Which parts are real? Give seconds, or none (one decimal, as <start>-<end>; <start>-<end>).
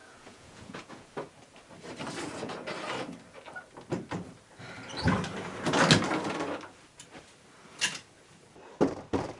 1.1-9.4